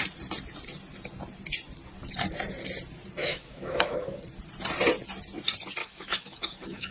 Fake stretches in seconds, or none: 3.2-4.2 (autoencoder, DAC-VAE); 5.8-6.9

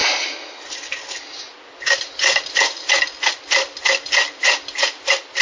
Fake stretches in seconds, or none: none

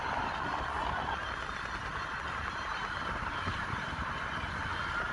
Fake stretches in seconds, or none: none